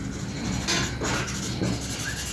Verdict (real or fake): real